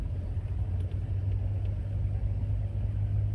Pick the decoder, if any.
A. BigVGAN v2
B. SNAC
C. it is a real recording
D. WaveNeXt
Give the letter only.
C